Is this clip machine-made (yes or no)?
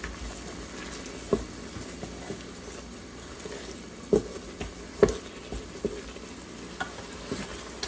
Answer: no